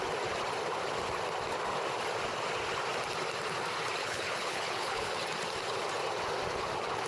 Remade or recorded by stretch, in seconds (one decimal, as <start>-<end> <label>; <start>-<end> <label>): 0.0-4.0 recorded; 4.0-5.1 remade; 5.1-7.1 recorded